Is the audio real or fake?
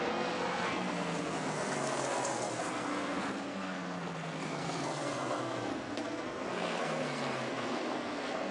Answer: fake